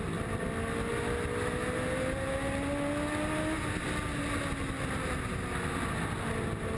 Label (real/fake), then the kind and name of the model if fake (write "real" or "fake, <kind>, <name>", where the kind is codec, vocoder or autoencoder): real